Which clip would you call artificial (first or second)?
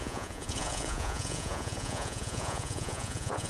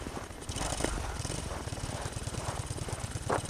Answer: first